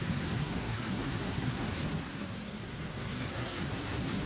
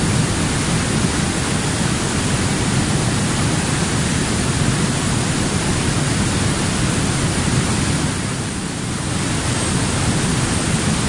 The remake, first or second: first